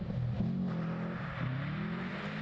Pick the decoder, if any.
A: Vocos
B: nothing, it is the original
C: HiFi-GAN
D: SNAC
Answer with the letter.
B